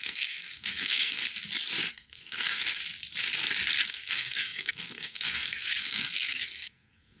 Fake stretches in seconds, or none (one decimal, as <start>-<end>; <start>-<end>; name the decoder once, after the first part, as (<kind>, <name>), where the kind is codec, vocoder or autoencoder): 0.0-1.2 (codec, SNAC); 1.9-2.8; 3.9-7.2